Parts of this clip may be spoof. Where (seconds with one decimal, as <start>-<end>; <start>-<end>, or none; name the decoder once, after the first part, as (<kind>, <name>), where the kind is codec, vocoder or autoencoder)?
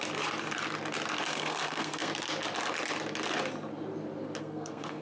1.3-2.1 (codec, SNAC); 4.4-5.0